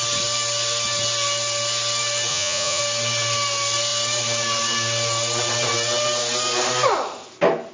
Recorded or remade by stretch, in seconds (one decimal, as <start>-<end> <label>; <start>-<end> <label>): 0.0-2.3 recorded; 2.3-2.8 remade; 2.8-7.7 recorded

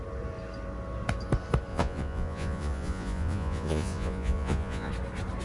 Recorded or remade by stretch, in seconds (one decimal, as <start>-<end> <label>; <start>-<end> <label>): 0.0-1.7 recorded; 1.7-4.9 remade; 4.9-5.4 recorded

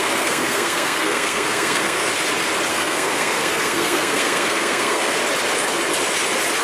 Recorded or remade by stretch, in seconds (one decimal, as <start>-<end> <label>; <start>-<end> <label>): 0.0-2.1 remade; 2.1-2.7 recorded; 2.7-5.2 remade; 5.2-6.6 recorded

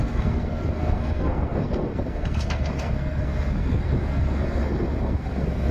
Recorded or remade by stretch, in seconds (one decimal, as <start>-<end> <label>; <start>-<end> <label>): 0.0-5.7 remade

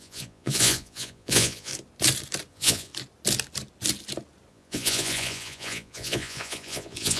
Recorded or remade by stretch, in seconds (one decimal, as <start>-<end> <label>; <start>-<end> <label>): 0.0-1.7 remade; 1.7-2.5 recorded; 2.5-2.9 remade; 2.9-4.5 recorded; 4.5-7.2 remade